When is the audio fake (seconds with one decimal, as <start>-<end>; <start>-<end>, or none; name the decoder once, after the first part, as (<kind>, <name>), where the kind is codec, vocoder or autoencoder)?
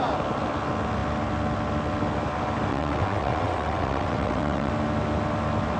2.7-4.7 (vocoder, WaveNeXt)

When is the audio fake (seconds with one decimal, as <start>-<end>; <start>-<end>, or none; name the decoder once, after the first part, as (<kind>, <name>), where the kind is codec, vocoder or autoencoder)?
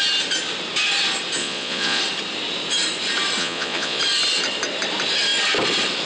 1.4-2.0 (vocoder, Vocos); 3.4-4.0